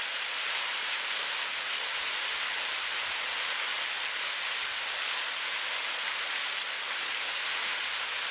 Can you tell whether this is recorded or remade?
recorded